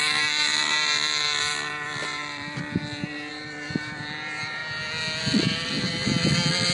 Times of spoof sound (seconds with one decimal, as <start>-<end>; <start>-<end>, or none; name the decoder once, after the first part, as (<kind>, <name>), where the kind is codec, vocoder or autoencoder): 0.0-2.8 (vocoder, BigVGAN v2); 3.3-4.6; 5.2-6.7

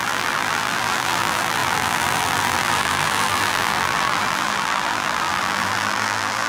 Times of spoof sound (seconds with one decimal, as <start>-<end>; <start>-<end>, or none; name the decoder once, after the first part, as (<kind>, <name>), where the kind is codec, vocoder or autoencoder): 0.0-6.5 (vocoder, BigVGAN v2)

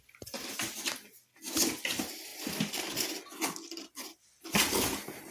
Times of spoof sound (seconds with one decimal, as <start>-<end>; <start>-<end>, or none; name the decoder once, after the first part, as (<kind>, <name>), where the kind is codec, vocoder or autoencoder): none

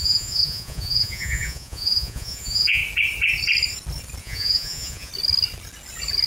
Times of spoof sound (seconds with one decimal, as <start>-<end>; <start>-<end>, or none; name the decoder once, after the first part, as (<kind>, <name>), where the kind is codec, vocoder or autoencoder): 0.0-2.8 (vocoder, Vocos); 4.2-5.1

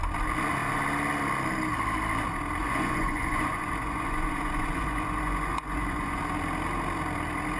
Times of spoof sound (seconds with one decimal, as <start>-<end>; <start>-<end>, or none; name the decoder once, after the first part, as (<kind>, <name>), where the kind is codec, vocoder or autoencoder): 2.6-6.2 (vocoder, Vocos)